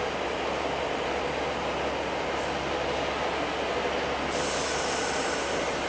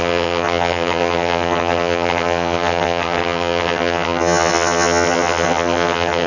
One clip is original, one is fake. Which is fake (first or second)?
second